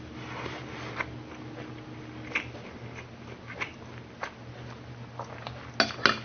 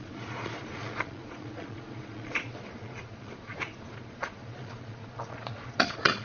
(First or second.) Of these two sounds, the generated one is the second